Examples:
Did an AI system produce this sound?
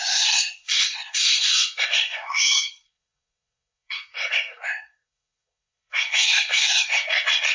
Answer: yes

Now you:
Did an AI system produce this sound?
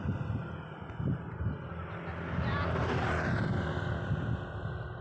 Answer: no